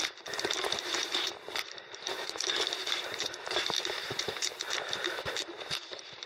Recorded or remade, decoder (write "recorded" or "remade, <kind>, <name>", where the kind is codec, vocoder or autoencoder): remade, vocoder, BigVGAN v2